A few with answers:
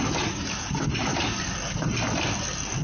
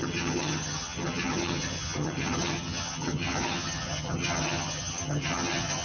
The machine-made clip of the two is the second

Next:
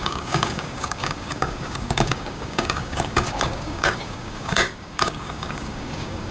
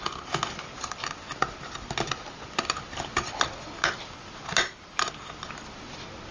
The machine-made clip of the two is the first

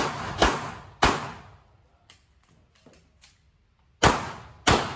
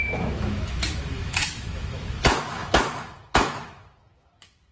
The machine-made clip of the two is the second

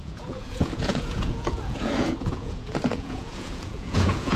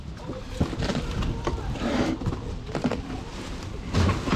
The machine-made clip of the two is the first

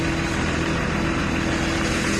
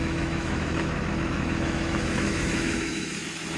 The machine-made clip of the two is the second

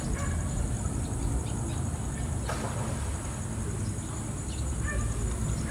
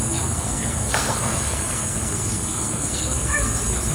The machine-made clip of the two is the second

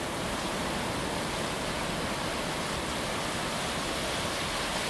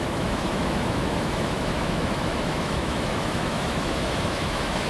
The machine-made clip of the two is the second